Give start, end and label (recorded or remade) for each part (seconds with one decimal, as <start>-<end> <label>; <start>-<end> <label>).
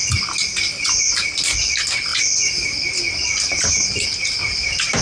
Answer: 0.0-5.0 recorded